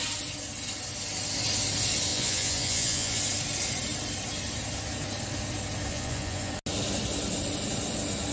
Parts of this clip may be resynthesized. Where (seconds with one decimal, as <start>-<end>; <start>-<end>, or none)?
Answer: 2.1-3.2; 5.9-6.5